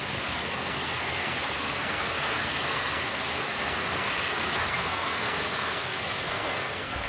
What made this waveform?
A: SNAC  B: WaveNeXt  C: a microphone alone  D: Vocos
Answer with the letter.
A